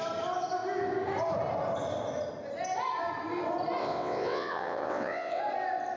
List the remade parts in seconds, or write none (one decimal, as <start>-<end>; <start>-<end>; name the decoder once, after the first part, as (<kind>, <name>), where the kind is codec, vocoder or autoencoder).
3.8-5.4 (vocoder, WaveNeXt)